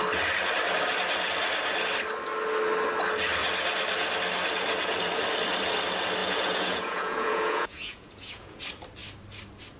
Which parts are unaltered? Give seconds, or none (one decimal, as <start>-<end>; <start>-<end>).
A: 0.0-6.2; 8.6-9.8